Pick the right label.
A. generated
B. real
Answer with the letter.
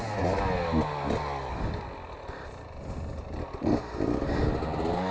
B